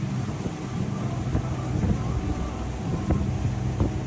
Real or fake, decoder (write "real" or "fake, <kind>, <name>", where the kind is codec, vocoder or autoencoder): real